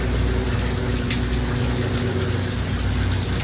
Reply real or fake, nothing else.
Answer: real